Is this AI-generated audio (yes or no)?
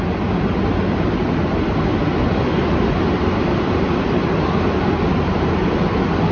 no